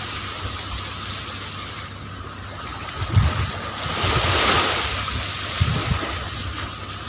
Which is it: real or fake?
real